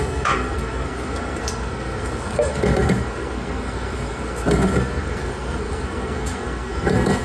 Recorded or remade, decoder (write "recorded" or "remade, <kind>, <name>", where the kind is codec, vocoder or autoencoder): remade, codec, SNAC